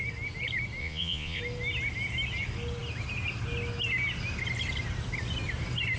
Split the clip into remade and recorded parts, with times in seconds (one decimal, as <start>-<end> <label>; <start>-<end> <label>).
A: 0.0-0.8 recorded; 0.8-1.4 remade; 1.4-6.0 recorded